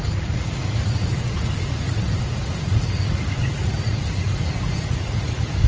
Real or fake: fake